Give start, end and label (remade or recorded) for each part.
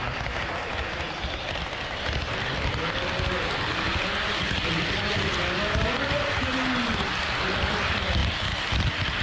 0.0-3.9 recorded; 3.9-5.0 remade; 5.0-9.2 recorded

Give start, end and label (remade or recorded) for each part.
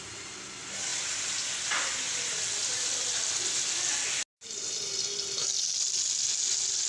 0.0-6.9 recorded